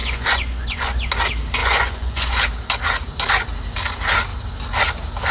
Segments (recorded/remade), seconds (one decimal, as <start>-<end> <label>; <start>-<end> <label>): 0.0-1.1 remade; 1.1-1.6 recorded; 1.6-2.4 remade; 2.4-5.3 recorded